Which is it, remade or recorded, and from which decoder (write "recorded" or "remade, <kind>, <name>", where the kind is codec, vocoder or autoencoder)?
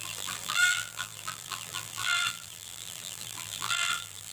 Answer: remade, vocoder, BigVGAN v2